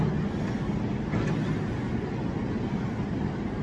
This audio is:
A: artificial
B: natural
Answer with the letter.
B